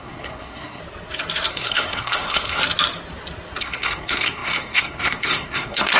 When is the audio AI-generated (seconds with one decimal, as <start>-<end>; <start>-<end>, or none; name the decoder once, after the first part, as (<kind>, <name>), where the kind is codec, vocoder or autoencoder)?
0.0-0.8 (codec, SNAC); 1.5-2.6; 3.6-6.0